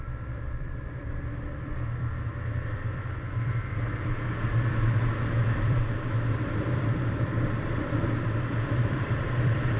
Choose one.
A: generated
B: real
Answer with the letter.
A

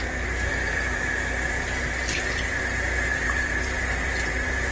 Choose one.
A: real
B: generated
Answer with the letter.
B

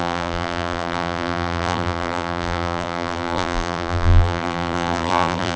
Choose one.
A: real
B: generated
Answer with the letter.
B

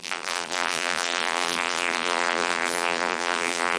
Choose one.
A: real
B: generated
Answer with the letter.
B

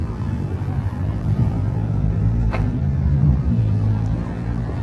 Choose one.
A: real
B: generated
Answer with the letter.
B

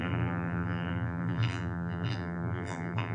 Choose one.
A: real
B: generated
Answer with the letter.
B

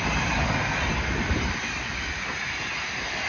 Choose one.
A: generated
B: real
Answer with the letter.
B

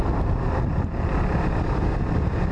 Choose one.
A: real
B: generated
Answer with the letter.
A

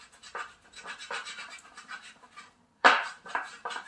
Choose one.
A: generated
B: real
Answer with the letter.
A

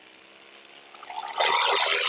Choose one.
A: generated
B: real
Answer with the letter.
B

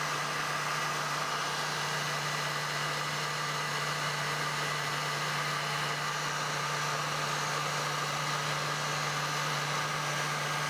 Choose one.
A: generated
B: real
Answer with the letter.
B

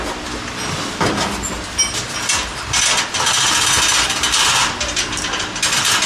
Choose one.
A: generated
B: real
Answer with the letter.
B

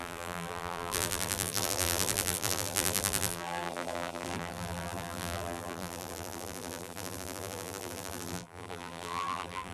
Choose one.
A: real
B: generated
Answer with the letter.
B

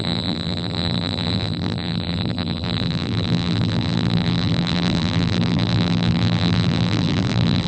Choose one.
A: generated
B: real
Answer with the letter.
A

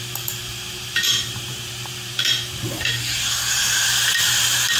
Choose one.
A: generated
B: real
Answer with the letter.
A